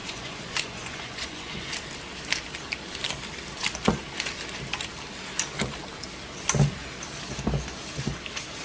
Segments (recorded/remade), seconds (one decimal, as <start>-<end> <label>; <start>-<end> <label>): 0.0-1.7 remade; 1.7-8.6 recorded